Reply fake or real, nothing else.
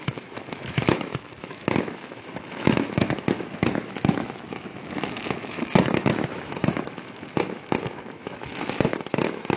fake